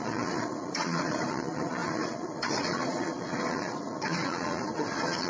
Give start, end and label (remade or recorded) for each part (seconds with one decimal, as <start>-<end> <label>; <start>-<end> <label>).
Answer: 0.0-5.3 remade